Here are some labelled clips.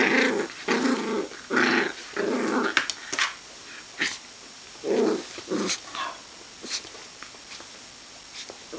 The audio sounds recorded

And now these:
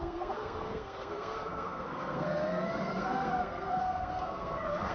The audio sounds remade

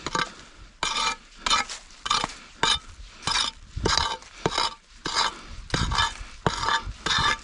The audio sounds recorded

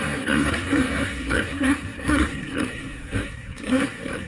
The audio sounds remade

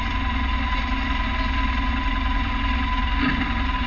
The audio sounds recorded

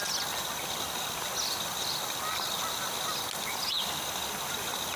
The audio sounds recorded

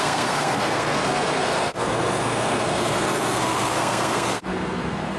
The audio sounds remade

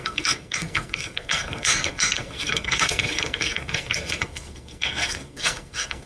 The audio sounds remade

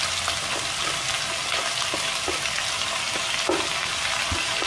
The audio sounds recorded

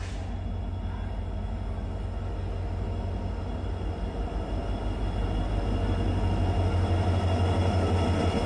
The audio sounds recorded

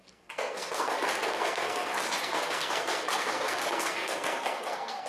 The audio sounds remade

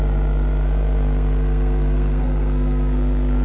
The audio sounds remade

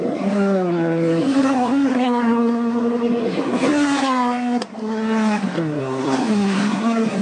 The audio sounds remade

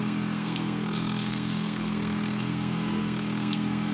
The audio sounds remade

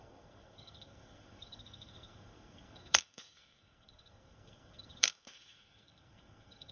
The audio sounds remade